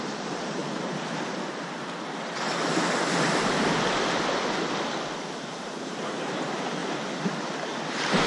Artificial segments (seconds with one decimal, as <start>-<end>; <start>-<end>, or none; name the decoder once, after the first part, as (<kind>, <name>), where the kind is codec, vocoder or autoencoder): 0.0-0.6 (vocoder, BigVGAN v2); 5.5-6.8; 7.9-8.3